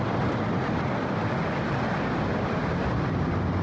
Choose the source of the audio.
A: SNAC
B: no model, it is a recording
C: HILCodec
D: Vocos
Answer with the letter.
B